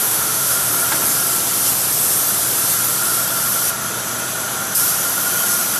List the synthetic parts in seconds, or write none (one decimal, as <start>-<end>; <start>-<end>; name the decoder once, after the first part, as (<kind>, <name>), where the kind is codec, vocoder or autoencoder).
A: 0.0-0.7 (autoencoder, DAC-VAE)